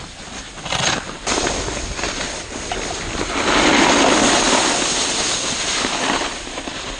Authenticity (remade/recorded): recorded